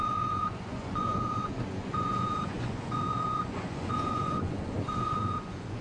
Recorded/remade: remade